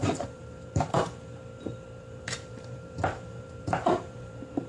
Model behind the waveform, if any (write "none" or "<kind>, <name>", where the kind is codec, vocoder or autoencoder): vocoder, BigVGAN v2